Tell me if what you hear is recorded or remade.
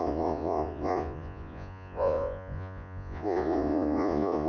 remade